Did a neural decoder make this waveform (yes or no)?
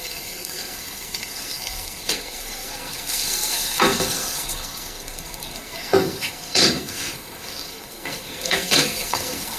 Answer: yes